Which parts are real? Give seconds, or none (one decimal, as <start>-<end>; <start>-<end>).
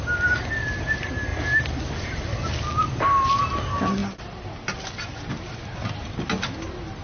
0.0-7.0